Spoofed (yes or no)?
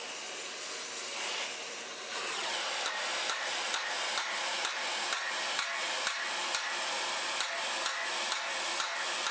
no